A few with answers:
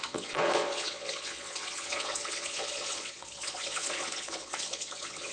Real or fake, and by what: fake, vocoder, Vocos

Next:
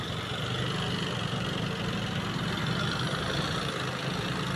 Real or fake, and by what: real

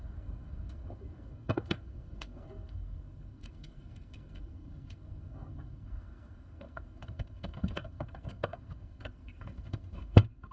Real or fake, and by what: fake, codec, SNAC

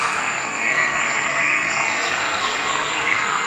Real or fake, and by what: fake, codec, SNAC